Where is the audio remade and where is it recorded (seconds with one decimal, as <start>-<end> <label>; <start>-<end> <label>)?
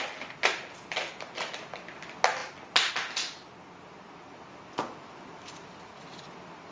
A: 0.0-6.7 recorded